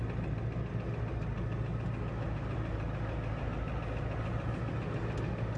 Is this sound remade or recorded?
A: recorded